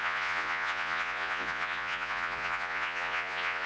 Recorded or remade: remade